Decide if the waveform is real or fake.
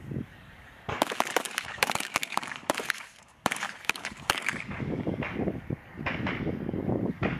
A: fake